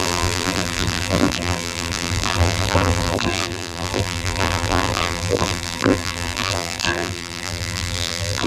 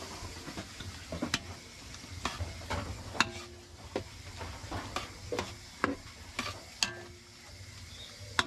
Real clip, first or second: second